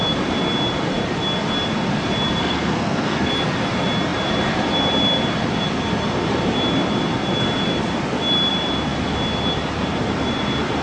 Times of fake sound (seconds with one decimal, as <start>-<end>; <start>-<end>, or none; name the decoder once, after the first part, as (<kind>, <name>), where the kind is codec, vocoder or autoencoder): 2.4-3.3 (codec, SNAC)